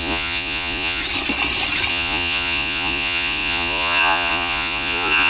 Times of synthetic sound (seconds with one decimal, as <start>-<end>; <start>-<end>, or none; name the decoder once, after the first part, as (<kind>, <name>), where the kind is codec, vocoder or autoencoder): 0.0-1.0 (vocoder, Vocos); 1.9-5.3